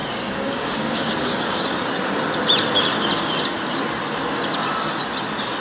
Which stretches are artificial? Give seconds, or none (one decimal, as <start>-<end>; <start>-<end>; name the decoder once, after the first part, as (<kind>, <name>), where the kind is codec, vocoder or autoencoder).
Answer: 0.0-1.6 (codec, DAC)

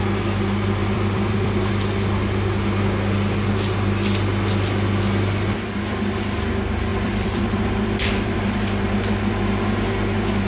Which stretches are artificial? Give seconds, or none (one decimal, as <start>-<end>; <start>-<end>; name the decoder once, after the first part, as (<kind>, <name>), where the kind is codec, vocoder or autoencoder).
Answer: 0.8-1.7 (vocoder, BigVGAN v2); 6.9-8.6

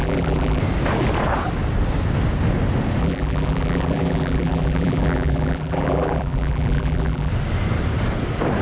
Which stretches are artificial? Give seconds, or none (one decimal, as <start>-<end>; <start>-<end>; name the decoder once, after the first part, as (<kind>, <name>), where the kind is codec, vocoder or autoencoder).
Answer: 0.0-0.6 (vocoder, BigVGAN v2); 3.0-7.3

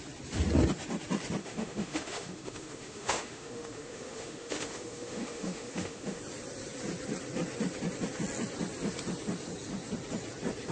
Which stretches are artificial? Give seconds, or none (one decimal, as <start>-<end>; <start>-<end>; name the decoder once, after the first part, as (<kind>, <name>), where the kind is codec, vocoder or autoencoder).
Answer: 1.4-6.2 (autoencoder, DAC-VAE)